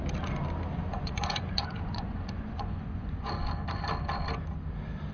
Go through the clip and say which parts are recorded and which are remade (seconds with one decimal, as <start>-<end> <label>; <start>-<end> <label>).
0.0-0.8 recorded; 0.8-3.3 remade; 3.3-5.1 recorded